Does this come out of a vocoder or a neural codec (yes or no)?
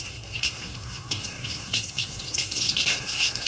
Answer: yes